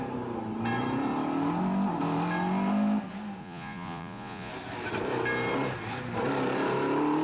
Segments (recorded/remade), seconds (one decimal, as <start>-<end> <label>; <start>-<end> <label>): 0.0-3.4 recorded; 3.4-4.5 remade; 4.5-7.2 recorded